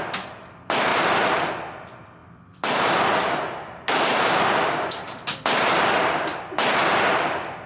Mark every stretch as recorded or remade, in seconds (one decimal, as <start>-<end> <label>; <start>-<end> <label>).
0.0-7.7 recorded